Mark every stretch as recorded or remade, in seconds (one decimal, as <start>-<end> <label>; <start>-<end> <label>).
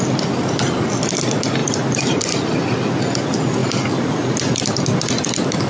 0.0-5.7 recorded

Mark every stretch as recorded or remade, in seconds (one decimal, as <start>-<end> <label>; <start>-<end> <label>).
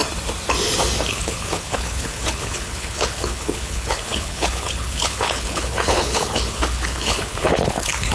0.0-1.1 recorded; 1.1-8.1 remade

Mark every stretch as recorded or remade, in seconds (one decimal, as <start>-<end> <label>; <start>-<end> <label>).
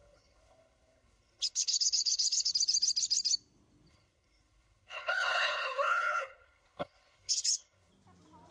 0.0-2.5 remade; 2.5-3.9 recorded; 3.9-7.9 remade; 7.9-8.5 recorded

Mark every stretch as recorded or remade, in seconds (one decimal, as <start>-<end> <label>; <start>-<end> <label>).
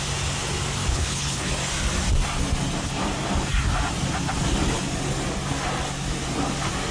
0.0-0.9 recorded; 0.9-1.5 remade; 1.5-6.9 recorded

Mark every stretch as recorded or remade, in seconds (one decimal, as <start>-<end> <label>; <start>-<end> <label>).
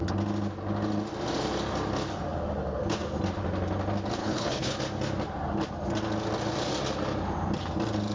0.0-4.2 recorded; 4.2-4.8 remade; 4.8-8.1 recorded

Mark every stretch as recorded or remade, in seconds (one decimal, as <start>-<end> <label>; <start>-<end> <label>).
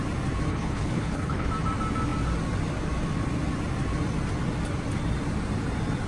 0.0-0.5 recorded; 0.5-1.5 remade; 1.5-6.1 recorded